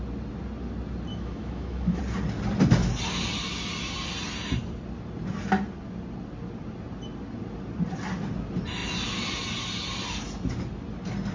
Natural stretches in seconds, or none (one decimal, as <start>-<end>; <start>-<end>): 0.0-1.1; 2.0-11.3